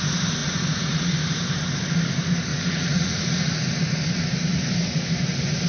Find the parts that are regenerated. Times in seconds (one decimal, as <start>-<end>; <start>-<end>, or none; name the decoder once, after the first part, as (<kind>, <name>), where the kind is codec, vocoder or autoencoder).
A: 0.4-1.1 (vocoder, Vocos); 2.5-3.5